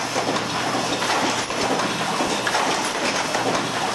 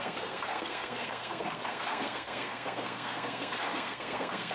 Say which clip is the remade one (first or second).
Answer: second